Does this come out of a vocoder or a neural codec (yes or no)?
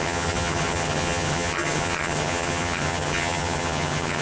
yes